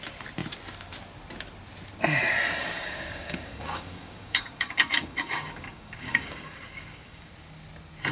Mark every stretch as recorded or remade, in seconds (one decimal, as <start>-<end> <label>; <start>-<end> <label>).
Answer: 0.0-2.6 recorded; 2.6-7.3 remade; 7.3-8.1 recorded

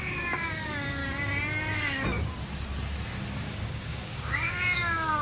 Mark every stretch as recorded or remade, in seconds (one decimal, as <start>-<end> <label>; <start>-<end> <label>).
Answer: 0.0-1.0 remade; 1.0-3.4 recorded; 3.4-5.2 remade

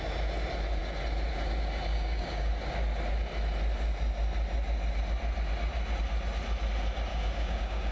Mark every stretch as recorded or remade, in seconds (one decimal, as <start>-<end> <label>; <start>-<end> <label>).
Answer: 0.0-1.9 recorded; 1.9-2.5 remade; 2.5-7.1 recorded; 7.1-7.9 remade

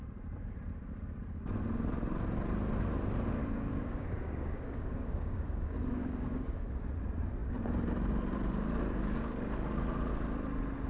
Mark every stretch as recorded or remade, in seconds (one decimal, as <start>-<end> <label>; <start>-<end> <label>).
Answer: 0.0-3.4 recorded; 3.4-6.7 remade; 6.7-10.9 recorded

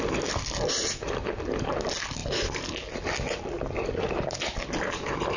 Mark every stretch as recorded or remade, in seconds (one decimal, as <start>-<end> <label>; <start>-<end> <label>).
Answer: 0.0-5.4 recorded

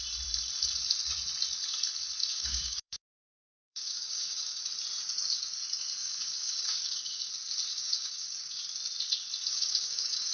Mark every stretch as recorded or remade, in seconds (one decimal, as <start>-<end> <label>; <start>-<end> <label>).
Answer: 0.0-2.2 recorded; 2.2-4.6 remade; 4.6-6.0 recorded; 6.0-7.3 remade; 7.3-7.7 recorded; 7.7-8.6 remade; 8.6-9.5 recorded; 9.5-10.3 remade